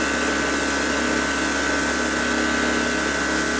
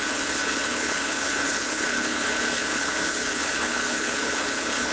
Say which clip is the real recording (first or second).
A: first